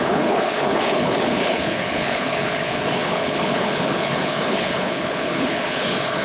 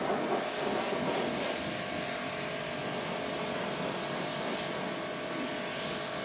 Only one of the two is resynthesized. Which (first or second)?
first